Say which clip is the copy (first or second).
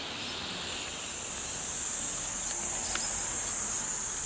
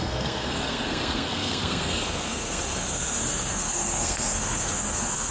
second